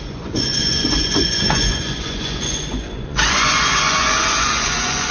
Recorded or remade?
remade